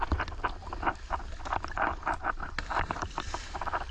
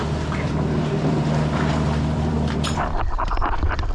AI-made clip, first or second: second